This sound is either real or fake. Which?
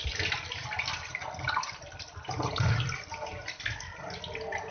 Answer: real